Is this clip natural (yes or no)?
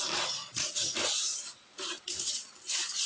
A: no